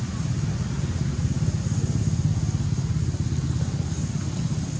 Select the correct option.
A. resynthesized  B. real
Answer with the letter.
B